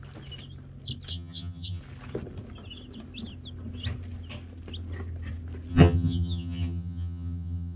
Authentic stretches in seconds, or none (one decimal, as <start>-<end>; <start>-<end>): 0.0-1.1; 1.8-5.7